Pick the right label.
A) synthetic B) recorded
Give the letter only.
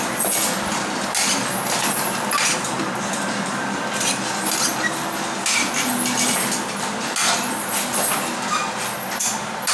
B